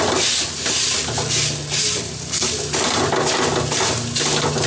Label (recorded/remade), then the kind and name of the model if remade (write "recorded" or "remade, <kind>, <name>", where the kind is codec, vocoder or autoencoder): recorded